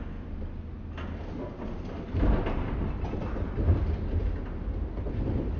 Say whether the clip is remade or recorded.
recorded